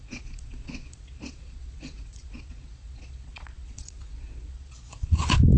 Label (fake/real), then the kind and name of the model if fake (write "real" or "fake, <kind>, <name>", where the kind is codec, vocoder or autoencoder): fake, vocoder, Vocos